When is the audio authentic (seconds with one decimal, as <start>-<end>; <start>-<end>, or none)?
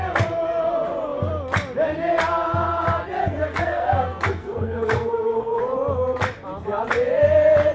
0.0-3.2; 5.6-7.7